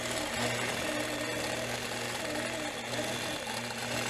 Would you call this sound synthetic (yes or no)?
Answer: no